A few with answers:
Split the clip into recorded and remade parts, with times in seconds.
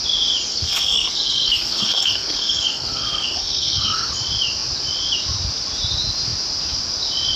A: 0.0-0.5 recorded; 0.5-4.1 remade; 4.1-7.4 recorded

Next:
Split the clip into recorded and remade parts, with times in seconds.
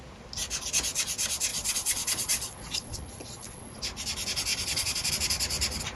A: 0.0-1.5 recorded; 1.5-3.8 remade; 3.8-4.5 recorded; 4.5-5.1 remade; 5.1-6.0 recorded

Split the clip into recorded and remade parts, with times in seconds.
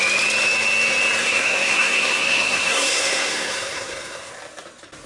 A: 0.0-1.2 recorded; 1.2-4.3 remade; 4.3-5.1 recorded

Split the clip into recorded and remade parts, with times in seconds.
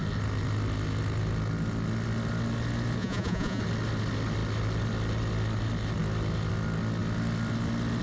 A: 0.0-3.0 recorded; 3.0-3.6 remade; 3.6-8.0 recorded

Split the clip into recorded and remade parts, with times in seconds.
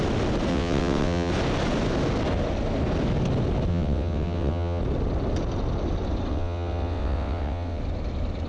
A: 0.0-0.5 recorded; 0.5-1.3 remade; 1.3-3.7 recorded; 3.7-4.8 remade; 4.8-6.3 recorded; 6.3-7.8 remade; 7.8-8.5 recorded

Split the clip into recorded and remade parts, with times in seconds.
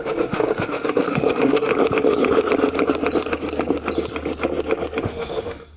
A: 0.0-1.7 remade; 1.7-5.0 recorded; 5.0-5.8 remade